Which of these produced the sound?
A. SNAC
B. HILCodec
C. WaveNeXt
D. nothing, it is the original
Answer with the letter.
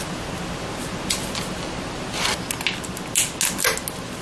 D